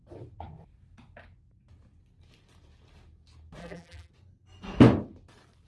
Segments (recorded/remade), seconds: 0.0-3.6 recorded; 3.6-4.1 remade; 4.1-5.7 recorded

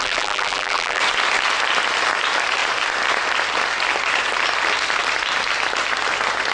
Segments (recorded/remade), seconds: 0.0-1.0 remade; 1.0-6.5 recorded

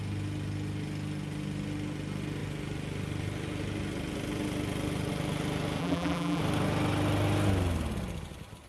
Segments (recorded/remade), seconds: 0.0-5.8 recorded; 5.8-6.4 remade; 6.4-8.7 recorded

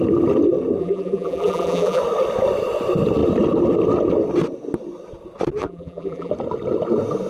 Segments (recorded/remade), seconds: 0.0-0.8 recorded; 0.8-2.0 remade; 2.0-5.6 recorded; 5.6-6.3 remade; 6.3-7.3 recorded